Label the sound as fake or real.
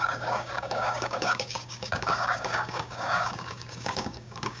fake